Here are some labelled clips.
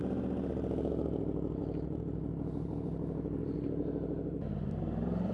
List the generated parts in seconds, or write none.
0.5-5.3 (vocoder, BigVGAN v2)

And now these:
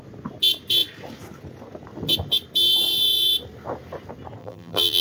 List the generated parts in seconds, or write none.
4.4-5.0 (vocoder, BigVGAN v2)